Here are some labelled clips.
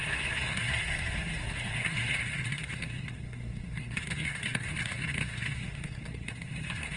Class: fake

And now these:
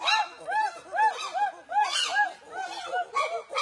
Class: fake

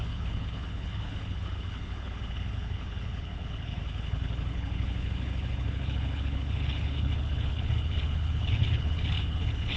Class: fake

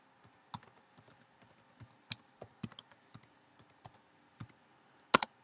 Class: real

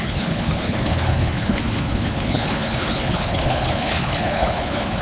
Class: fake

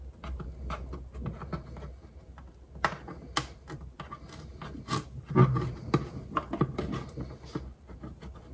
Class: real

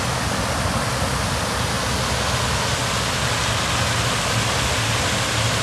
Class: real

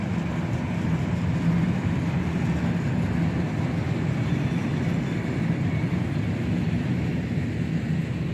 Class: real